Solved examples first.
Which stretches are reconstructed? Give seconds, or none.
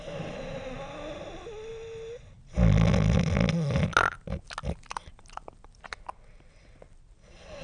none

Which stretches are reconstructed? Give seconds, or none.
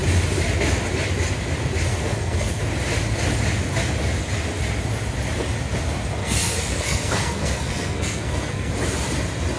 1.9-2.6; 6.2-8.7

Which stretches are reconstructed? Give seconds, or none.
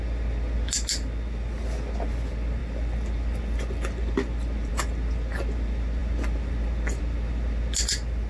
none